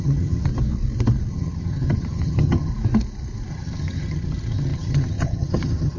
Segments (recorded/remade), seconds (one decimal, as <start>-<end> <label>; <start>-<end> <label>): 0.0-0.5 remade; 0.5-1.3 recorded; 1.3-2.7 remade; 2.7-3.5 recorded; 3.5-6.0 remade